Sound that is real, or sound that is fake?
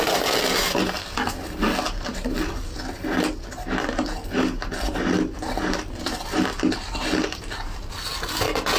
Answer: fake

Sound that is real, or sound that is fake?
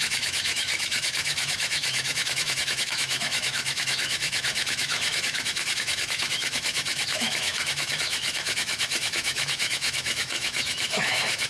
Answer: fake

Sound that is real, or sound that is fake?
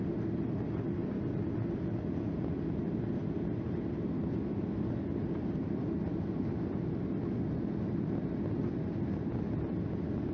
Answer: real